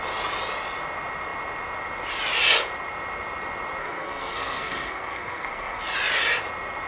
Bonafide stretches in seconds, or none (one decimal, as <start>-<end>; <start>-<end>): 0.0-3.8; 5.8-6.9

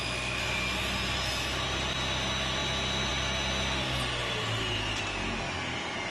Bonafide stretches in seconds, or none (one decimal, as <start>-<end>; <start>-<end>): 0.0-4.2; 5.0-6.1

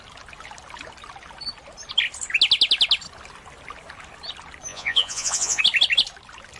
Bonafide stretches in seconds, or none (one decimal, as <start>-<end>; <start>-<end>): 0.0-4.7; 5.6-6.6

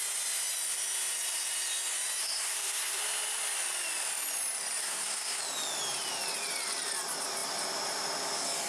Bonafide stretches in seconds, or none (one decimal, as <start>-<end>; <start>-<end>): 0.0-2.2; 3.0-4.8; 5.4-8.7

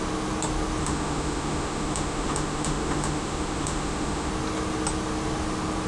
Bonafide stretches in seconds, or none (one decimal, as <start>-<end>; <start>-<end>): 0.0-0.8; 4.3-5.9

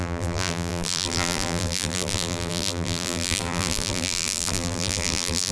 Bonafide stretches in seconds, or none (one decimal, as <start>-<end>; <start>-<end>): none